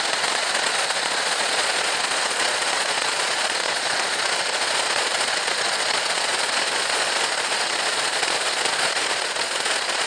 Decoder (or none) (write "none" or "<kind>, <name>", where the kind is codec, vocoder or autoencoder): vocoder, Vocos